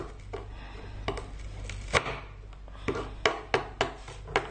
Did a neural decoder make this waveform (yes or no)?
no